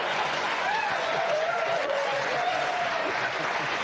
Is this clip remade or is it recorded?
remade